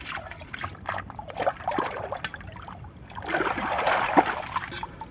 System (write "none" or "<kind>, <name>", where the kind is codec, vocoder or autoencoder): none